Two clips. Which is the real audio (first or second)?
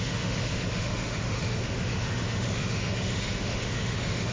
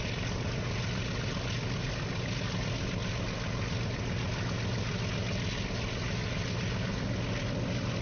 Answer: second